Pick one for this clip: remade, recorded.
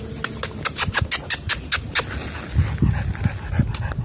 recorded